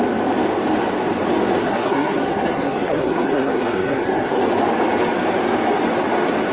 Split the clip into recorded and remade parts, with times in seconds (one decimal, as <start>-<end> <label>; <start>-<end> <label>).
0.0-1.6 recorded; 1.6-4.4 remade; 4.4-6.5 recorded

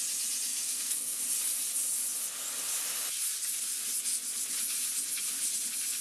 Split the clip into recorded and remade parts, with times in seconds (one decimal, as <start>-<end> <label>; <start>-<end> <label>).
0.0-0.5 recorded; 0.5-1.2 remade; 1.2-6.0 recorded

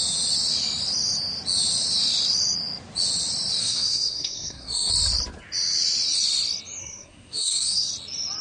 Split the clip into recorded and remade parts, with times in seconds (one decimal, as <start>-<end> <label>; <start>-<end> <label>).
0.0-3.6 recorded; 3.6-4.9 remade; 4.9-6.8 recorded; 6.8-7.9 remade; 7.9-8.4 recorded

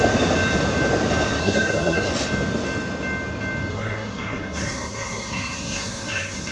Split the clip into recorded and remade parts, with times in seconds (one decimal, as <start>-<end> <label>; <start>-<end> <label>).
0.0-1.4 recorded; 1.4-2.1 remade; 2.1-3.7 recorded; 3.7-6.5 remade

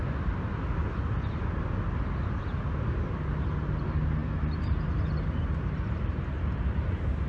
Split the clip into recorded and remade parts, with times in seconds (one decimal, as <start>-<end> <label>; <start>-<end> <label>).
0.0-7.3 recorded

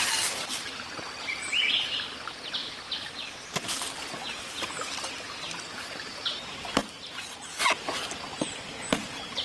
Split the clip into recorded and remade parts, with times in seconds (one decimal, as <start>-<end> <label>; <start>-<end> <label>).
0.0-9.4 recorded